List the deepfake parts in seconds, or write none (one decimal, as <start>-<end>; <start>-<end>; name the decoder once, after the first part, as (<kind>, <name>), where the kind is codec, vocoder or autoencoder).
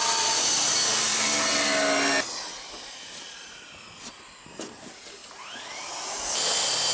none